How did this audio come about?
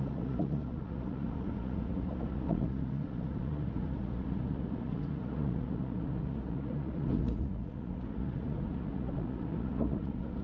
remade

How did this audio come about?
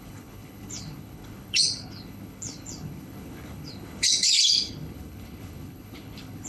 remade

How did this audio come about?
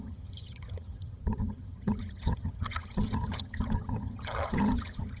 remade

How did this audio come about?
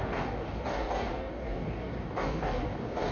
remade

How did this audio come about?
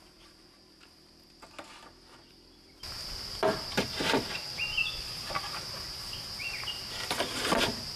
recorded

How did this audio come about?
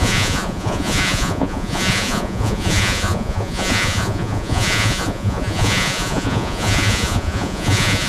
remade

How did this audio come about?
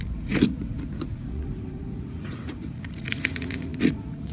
remade